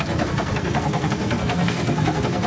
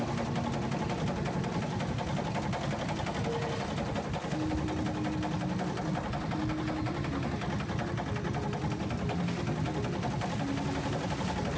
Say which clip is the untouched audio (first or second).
second